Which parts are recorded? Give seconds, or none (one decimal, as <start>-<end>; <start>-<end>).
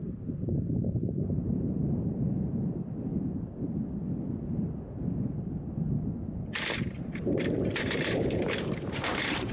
3.1-7.0